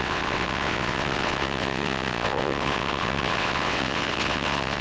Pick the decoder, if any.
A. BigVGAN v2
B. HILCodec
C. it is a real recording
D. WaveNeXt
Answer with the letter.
D